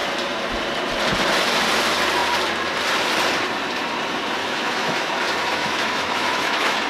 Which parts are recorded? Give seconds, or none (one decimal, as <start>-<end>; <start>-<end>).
0.0-4.4; 5.1-5.6